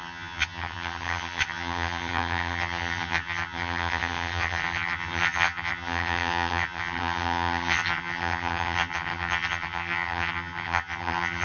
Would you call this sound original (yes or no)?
no